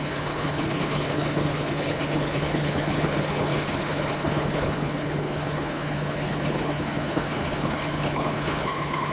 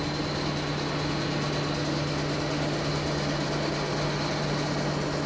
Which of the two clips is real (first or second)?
second